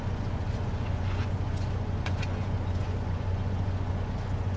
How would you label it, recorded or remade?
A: remade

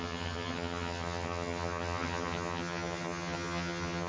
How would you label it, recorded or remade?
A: remade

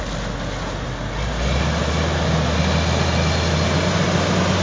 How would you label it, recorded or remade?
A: recorded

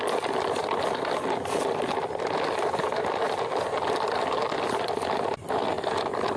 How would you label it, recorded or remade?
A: recorded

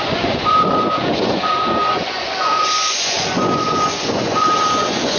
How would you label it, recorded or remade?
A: remade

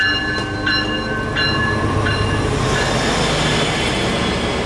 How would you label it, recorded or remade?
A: recorded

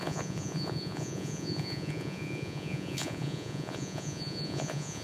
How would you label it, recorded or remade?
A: remade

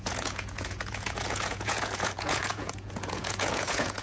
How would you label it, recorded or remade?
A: remade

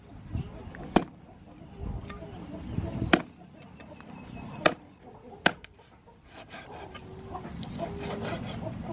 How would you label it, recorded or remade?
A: recorded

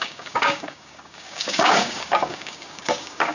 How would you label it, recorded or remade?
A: remade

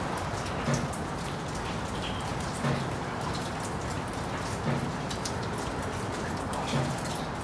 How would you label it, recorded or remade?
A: recorded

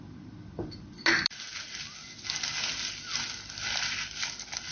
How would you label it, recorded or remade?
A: recorded